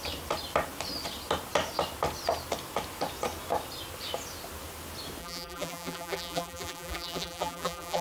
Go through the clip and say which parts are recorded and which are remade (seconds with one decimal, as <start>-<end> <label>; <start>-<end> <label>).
0.0-5.2 recorded; 5.2-8.0 remade